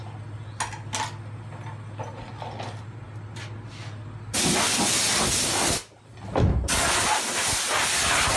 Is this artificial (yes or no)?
no